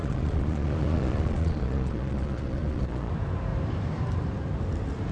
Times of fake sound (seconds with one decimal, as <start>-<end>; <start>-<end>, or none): 0.0-3.1

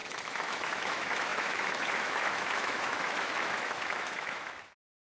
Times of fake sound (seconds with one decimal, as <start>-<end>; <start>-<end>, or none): 0.0-5.1